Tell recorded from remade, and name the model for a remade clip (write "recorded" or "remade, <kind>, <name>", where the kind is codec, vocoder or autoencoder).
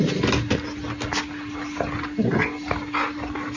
recorded